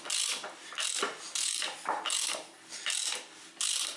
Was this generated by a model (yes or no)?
no